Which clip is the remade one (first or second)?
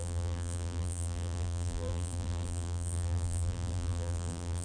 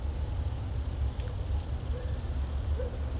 first